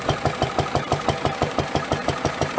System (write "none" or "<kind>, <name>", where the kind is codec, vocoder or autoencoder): vocoder, BigVGAN v2